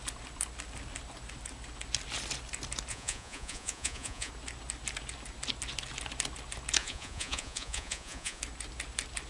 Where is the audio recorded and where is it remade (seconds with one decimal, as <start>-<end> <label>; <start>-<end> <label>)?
0.0-2.9 recorded; 2.9-4.3 remade; 4.3-6.8 recorded; 6.8-8.4 remade; 8.4-9.3 recorded